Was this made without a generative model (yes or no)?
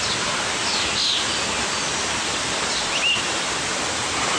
yes